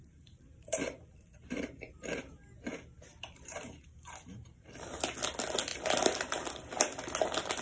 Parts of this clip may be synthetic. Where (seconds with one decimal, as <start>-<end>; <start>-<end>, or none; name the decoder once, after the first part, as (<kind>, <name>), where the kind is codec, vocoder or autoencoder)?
0.0-2.3 (vocoder, BigVGAN v2); 3.1-4.7